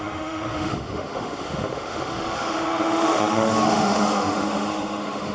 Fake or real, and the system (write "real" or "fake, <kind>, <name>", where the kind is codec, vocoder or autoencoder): fake, autoencoder, DAC-VAE